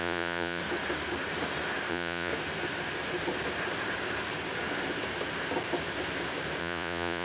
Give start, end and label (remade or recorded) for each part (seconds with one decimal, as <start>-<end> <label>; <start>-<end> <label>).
0.0-0.6 remade; 0.6-1.9 recorded; 1.9-2.3 remade; 2.3-6.6 recorded; 6.6-7.2 remade